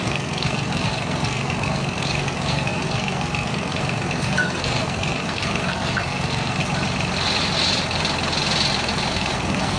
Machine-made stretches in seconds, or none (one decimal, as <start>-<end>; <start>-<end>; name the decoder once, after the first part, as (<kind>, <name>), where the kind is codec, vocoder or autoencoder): 0.0-6.6 (codec, SNAC); 9.1-9.8